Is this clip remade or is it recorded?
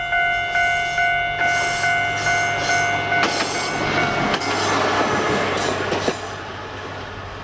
recorded